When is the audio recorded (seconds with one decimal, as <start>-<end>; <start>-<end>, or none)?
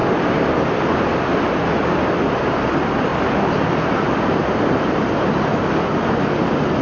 0.0-6.8